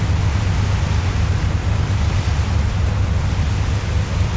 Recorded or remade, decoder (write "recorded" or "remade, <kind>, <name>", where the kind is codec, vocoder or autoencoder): recorded